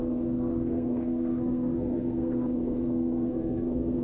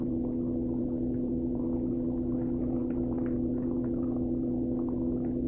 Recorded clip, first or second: second